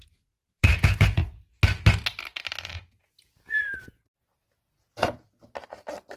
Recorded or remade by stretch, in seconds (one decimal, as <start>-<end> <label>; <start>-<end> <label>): 0.0-0.7 recorded; 0.7-1.6 remade; 1.6-2.7 recorded; 2.7-5.3 remade; 5.3-6.2 recorded